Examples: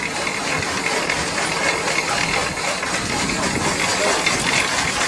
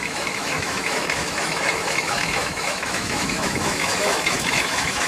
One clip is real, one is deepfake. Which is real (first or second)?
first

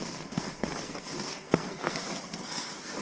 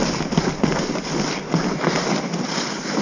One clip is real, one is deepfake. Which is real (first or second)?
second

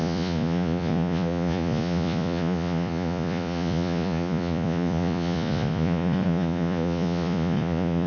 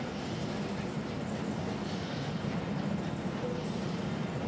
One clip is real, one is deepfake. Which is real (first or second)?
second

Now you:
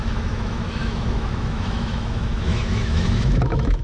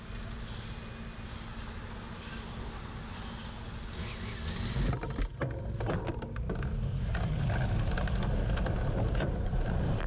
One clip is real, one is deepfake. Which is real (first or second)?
second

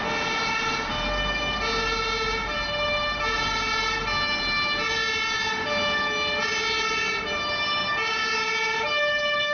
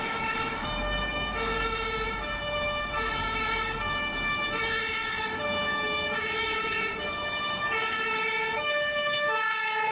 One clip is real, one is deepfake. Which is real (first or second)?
first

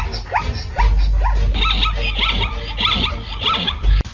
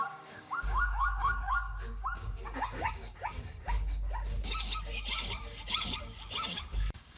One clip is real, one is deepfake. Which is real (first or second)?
first